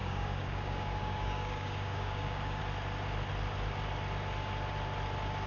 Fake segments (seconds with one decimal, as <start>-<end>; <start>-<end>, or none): 0.0-2.6